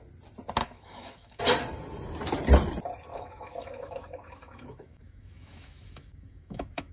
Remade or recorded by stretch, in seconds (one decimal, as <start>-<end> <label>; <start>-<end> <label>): 0.0-0.6 recorded; 0.6-1.4 remade; 1.4-3.1 recorded; 3.1-6.9 remade